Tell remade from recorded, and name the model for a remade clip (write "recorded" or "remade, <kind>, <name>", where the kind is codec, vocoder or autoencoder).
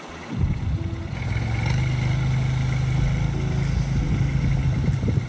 recorded